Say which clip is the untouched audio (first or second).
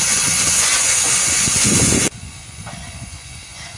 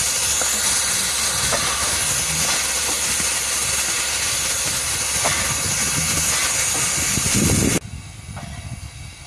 second